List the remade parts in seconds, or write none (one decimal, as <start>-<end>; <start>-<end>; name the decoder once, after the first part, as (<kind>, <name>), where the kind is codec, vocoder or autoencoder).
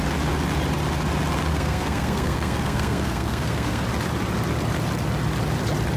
1.5-3.8 (codec, SNAC)